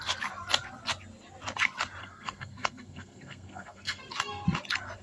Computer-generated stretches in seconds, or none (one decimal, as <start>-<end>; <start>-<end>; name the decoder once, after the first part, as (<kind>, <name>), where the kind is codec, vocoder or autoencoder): 2.0-4.0 (codec, SNAC)